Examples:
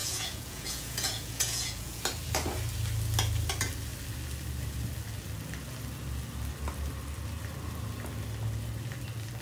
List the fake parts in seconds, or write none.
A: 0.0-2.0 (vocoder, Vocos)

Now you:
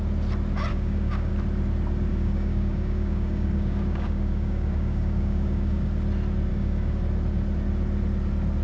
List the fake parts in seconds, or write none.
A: 0.7-1.3 (codec, DAC); 2.1-5.9; 6.5-7.0